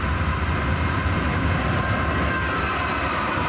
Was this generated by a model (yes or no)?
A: no